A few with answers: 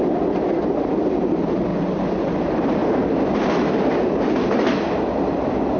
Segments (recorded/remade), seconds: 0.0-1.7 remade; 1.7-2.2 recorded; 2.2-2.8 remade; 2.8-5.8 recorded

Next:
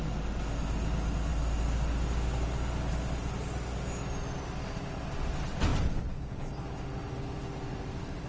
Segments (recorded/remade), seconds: 0.0-5.7 recorded; 5.7-6.5 remade; 6.5-7.0 recorded; 7.0-8.3 remade

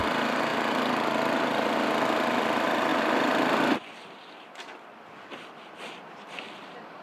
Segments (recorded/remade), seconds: 0.0-0.5 remade; 0.5-1.5 recorded; 1.5-2.9 remade; 2.9-4.0 recorded; 4.0-7.0 remade

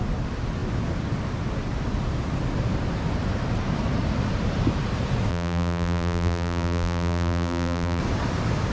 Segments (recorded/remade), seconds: 0.0-5.3 recorded; 5.3-8.0 remade; 8.0-8.7 recorded

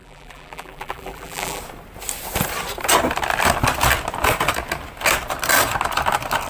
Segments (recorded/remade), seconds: 0.0-1.6 remade; 1.6-6.5 recorded

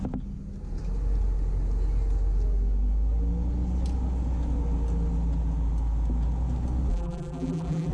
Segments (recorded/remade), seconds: 0.0-6.9 recorded; 6.9-7.9 remade

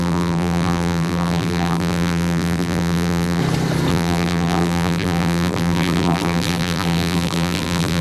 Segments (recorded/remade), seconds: 0.0-3.4 remade; 3.4-3.9 recorded; 3.9-8.0 remade